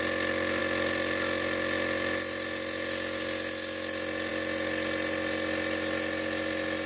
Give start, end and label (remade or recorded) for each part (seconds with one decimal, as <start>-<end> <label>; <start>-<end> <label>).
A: 0.0-6.9 recorded